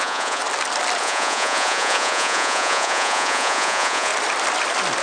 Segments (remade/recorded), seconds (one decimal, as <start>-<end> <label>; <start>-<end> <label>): 0.0-0.4 remade; 0.4-1.0 recorded; 1.0-4.1 remade; 4.1-5.0 recorded